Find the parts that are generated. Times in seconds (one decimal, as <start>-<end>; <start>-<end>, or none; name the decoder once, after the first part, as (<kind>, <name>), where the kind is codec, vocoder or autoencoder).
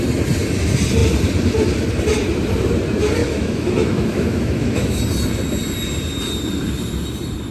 3.2-5.0 (autoencoder, DAC-VAE)